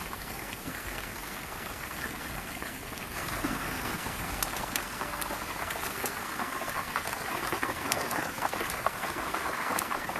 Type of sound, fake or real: fake